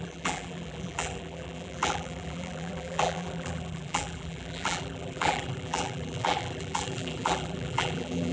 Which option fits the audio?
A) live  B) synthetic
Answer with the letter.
B